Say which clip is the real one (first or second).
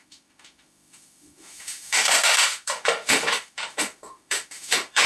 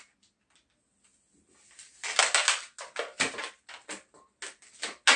second